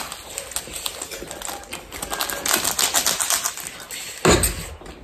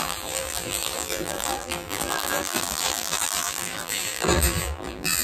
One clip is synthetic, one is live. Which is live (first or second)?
first